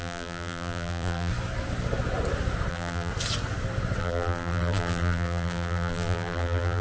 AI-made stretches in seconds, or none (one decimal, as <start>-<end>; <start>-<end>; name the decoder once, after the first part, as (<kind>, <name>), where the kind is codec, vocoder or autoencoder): 0.0-1.3 (vocoder, BigVGAN v2); 2.7-3.1; 4.0-6.8